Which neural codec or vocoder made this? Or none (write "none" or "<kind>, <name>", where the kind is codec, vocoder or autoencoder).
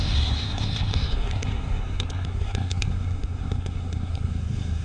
codec, SNAC